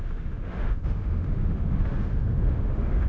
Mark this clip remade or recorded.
remade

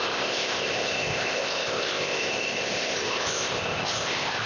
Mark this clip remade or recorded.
remade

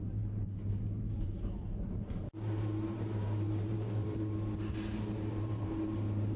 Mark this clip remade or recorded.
remade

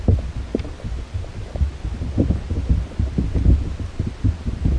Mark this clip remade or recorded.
recorded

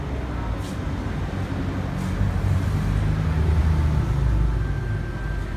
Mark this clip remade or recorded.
recorded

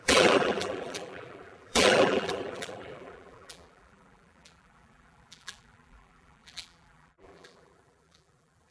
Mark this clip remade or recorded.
remade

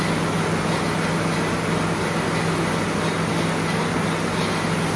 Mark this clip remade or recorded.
recorded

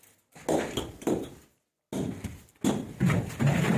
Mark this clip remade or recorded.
recorded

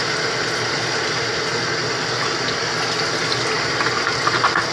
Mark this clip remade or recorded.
recorded